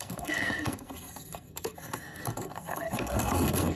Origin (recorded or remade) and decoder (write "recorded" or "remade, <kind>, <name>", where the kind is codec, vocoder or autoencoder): remade, codec, SNAC